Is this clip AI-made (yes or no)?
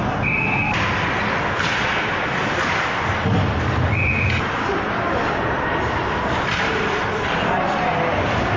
no